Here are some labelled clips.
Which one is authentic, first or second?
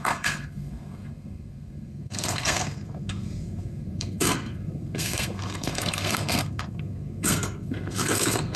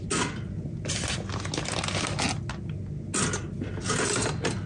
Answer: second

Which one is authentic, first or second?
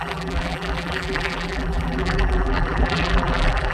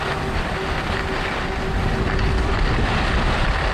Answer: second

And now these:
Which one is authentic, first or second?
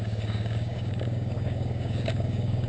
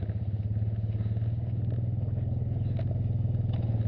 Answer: second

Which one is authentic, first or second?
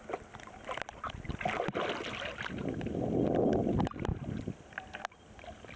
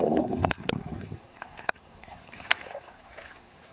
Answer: first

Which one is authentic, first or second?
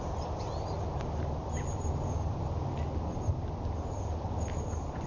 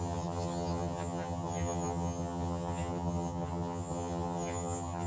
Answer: first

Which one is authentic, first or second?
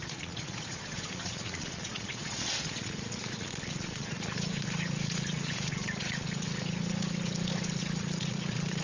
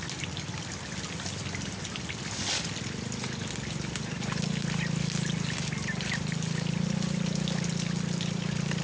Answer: second